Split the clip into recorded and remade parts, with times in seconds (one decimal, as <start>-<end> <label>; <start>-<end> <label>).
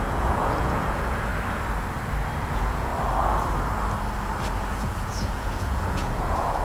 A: 0.0-1.3 remade; 1.3-2.5 recorded; 2.5-2.9 remade; 2.9-4.7 recorded; 4.7-6.6 remade